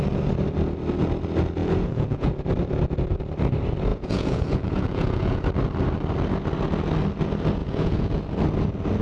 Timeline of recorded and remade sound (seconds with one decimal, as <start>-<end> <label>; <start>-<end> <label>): 0.0-1.6 recorded; 1.6-2.3 remade; 2.3-3.9 recorded; 3.9-5.4 remade; 5.4-7.6 recorded; 7.6-8.2 remade; 8.2-9.0 recorded